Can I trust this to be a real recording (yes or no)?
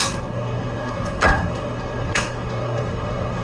no